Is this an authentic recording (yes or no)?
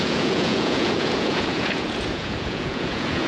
no